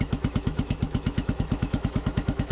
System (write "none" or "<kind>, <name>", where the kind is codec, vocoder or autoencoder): autoencoder, DAC-VAE